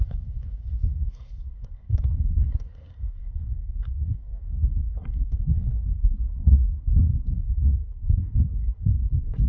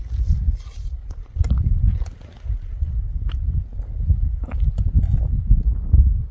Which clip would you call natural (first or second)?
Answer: second